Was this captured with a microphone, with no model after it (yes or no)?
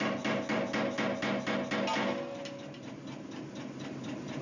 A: yes